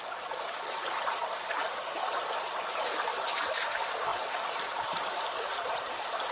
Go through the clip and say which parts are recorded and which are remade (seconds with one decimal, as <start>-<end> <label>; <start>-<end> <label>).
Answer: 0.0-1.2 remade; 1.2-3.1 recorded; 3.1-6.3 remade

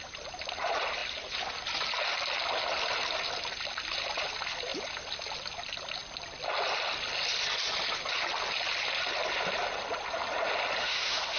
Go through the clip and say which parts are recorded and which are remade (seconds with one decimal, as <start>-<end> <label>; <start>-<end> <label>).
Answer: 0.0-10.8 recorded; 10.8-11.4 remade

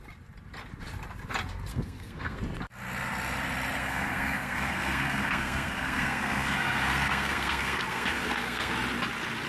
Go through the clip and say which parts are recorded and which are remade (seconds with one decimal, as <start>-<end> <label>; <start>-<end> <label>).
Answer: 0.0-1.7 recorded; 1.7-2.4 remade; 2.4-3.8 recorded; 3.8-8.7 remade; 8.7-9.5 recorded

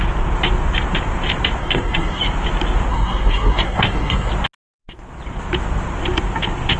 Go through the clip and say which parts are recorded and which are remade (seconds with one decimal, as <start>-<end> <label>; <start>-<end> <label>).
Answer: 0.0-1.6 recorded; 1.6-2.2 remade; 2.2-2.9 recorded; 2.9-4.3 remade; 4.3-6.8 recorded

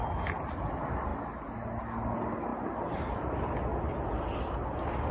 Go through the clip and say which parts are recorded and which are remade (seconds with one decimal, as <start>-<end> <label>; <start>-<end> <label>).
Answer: 0.0-2.5 recorded; 2.5-3.3 remade; 3.3-3.7 recorded; 3.7-4.5 remade; 4.5-5.1 recorded